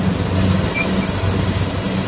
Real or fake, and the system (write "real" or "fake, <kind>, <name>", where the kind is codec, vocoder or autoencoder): real